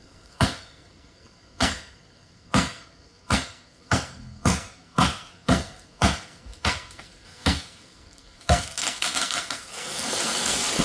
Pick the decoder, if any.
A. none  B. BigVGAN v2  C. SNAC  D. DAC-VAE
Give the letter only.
C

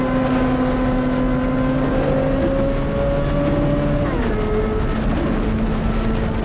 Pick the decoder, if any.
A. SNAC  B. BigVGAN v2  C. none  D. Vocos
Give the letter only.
C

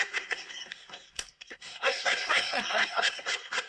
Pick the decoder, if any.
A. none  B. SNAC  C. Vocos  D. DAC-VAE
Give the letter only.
B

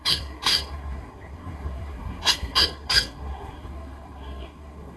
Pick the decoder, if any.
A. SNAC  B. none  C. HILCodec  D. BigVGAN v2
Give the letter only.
A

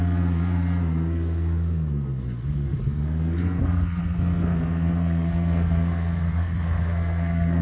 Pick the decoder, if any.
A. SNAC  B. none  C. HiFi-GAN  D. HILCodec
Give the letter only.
A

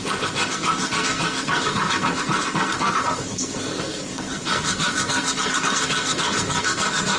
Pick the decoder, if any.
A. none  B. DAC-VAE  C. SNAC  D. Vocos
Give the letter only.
C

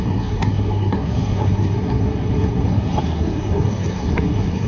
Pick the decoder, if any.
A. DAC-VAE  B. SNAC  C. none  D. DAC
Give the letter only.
B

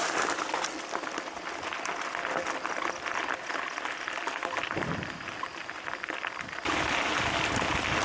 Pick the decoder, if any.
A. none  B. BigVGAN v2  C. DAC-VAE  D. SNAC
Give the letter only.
A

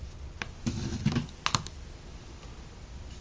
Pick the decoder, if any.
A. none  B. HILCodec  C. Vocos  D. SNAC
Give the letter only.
A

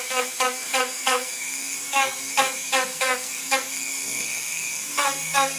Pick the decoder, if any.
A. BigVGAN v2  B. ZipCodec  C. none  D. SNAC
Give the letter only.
D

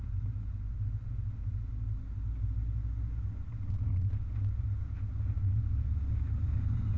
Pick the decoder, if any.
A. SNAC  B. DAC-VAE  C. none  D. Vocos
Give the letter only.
C